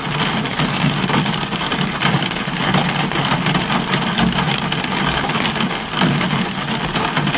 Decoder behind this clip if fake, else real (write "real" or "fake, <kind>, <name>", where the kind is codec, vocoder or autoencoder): real